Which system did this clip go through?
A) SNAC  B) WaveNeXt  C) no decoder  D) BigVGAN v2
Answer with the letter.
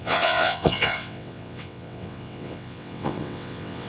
B